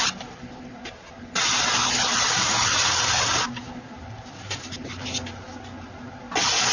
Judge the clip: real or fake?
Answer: real